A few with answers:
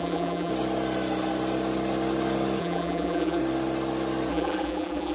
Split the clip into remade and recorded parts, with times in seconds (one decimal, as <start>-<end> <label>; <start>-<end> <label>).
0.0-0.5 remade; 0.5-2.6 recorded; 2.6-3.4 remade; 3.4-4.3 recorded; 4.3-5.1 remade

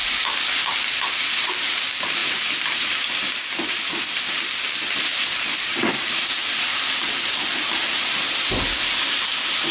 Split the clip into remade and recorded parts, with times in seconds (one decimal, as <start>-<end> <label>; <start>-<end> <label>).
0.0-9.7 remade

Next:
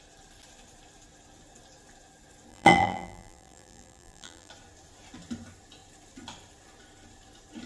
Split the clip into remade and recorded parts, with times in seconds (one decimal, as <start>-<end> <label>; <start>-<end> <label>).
0.0-2.5 recorded; 2.5-4.5 remade; 4.5-7.7 recorded